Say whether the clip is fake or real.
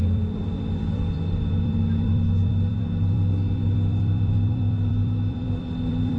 fake